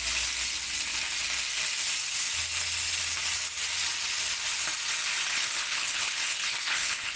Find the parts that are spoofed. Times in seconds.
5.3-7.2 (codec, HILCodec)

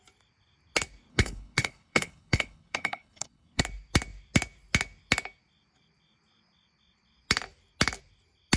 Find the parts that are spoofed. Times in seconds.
1.1-3.6 (codec, HILCodec)

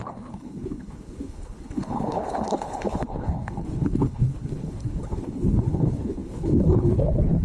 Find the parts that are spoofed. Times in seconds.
0.0-7.4 (codec, HILCodec)

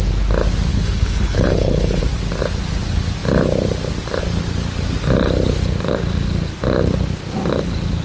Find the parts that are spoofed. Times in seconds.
0.7-2.0 (codec, HILCodec)